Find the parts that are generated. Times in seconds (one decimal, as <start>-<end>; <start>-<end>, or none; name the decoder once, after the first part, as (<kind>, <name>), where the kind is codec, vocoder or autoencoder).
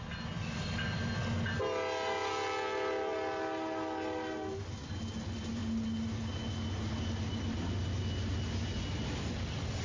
none